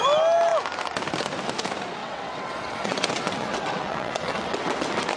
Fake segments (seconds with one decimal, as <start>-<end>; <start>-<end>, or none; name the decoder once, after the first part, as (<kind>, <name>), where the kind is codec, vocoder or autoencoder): 2.0-5.2 (vocoder, WaveNeXt)